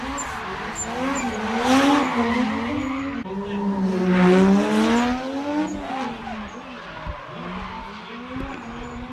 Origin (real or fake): real